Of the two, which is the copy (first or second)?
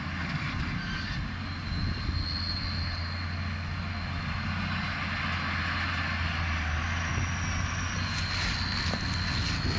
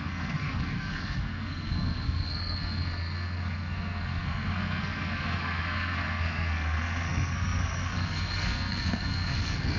second